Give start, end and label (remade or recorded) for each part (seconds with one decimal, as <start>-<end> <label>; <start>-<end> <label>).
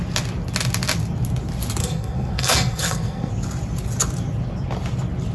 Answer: 0.0-1.8 recorded; 1.8-3.3 remade; 3.3-5.3 recorded